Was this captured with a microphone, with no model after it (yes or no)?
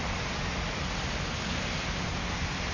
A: yes